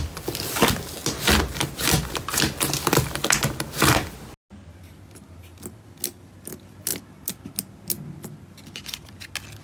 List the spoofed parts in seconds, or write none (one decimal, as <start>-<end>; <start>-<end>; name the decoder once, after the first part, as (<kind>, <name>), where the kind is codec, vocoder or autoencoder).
none